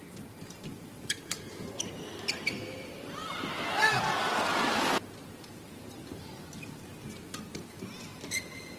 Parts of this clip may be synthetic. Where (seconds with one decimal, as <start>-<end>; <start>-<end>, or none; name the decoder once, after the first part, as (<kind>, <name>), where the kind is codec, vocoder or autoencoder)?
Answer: none